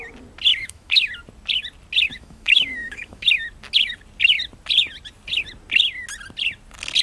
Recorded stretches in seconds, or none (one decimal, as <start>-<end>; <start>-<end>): 0.0-0.5; 1.1-2.1; 3.3-7.0